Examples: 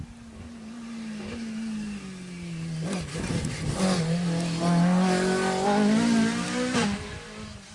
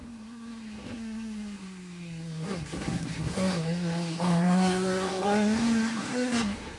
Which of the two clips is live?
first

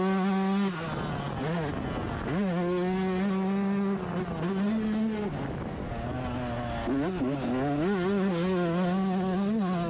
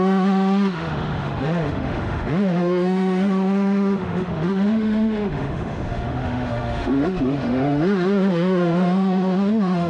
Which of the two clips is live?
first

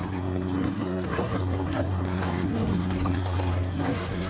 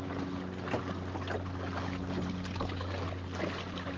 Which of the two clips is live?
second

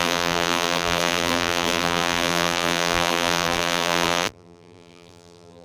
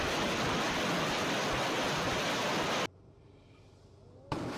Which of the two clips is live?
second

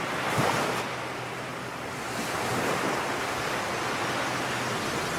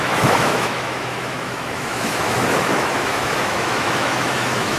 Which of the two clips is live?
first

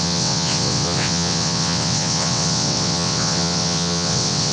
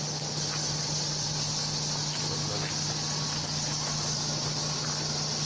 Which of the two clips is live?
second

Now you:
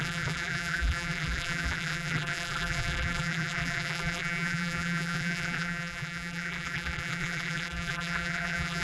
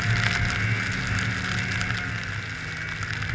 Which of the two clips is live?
second